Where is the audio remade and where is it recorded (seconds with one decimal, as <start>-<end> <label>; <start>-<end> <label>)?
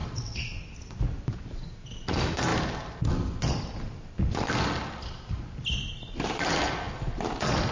0.0-0.5 remade; 0.5-7.7 recorded